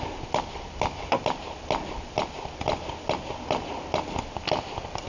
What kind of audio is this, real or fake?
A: real